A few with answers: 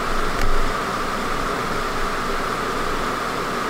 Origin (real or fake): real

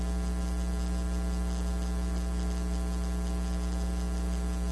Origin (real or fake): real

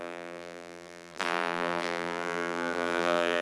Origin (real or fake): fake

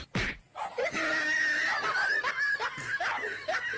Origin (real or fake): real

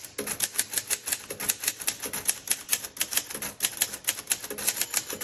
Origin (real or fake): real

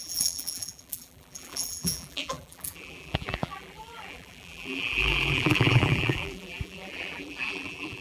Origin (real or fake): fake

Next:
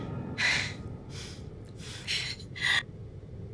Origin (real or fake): fake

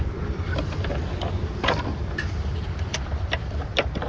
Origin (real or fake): fake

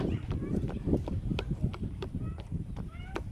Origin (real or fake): fake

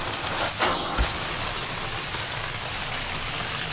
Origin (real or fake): fake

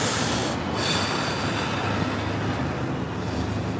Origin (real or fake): real